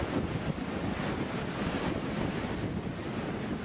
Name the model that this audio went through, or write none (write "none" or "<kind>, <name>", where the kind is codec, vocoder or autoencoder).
none